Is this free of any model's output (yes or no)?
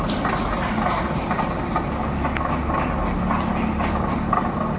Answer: yes